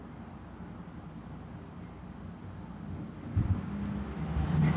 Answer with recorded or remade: recorded